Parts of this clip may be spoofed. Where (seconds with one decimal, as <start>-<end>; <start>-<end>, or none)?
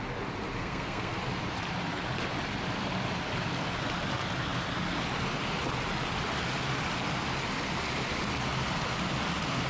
0.6-1.2